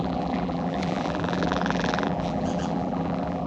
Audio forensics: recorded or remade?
remade